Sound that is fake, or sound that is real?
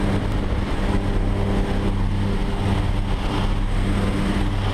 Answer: real